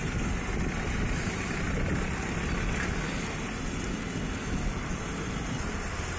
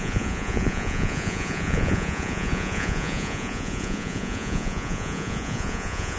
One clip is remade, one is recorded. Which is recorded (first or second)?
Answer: first